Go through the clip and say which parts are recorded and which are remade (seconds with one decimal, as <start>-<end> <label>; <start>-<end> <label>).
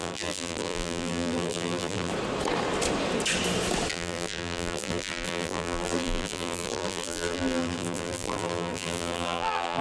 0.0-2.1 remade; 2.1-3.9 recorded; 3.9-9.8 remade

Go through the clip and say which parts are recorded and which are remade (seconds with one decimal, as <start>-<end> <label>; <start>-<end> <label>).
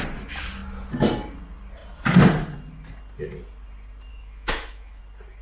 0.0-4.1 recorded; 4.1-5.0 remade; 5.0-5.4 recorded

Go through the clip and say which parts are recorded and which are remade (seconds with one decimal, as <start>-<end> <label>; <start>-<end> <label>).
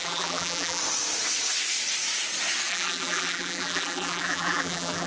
0.0-0.8 remade; 0.8-2.7 recorded; 2.7-5.1 remade